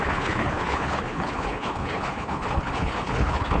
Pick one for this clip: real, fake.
fake